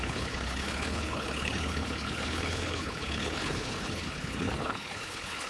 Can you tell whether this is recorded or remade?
remade